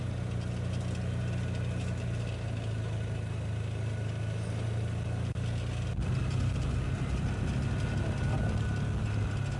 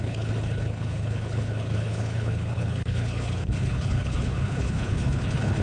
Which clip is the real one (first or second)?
first